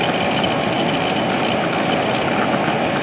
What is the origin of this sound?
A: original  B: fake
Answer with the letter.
A